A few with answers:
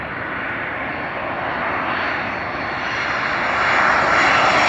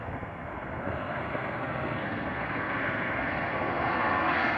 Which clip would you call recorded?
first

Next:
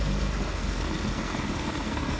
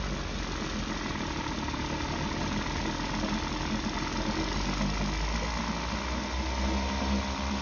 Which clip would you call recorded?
second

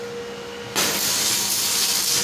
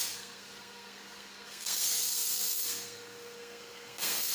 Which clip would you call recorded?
first